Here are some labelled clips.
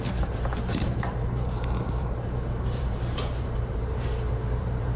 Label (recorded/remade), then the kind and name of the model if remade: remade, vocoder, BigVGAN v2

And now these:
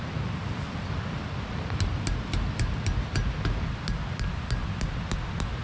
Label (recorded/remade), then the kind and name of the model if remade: recorded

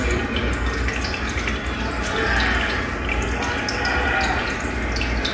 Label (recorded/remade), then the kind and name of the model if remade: recorded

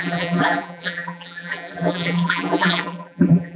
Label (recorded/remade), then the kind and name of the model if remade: remade, vocoder, BigVGAN v2